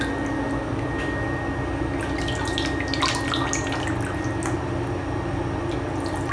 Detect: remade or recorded recorded